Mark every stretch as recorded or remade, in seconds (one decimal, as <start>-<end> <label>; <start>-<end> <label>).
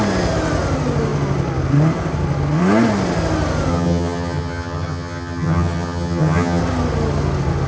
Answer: 0.0-3.7 recorded; 3.7-6.6 remade; 6.6-7.7 recorded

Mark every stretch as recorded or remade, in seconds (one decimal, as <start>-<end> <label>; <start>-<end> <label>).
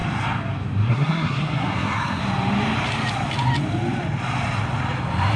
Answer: 0.0-0.9 recorded; 0.9-2.2 remade; 2.2-5.4 recorded